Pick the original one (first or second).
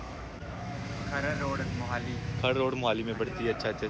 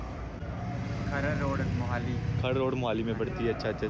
second